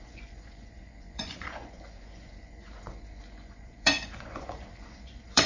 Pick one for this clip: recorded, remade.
remade